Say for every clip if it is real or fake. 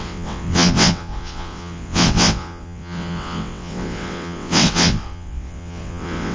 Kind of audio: fake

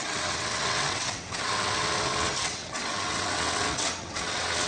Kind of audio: fake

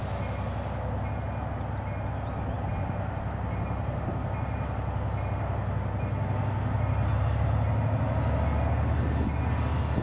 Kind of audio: real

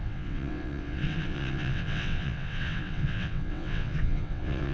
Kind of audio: fake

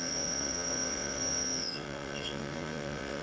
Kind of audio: fake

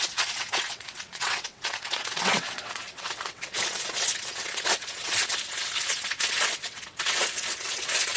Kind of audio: fake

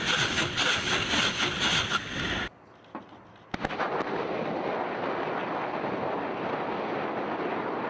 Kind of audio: real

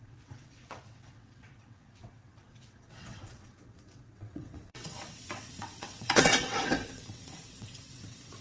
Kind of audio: fake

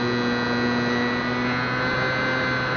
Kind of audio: real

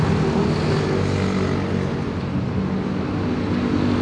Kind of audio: real